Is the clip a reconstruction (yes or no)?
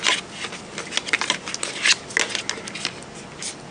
no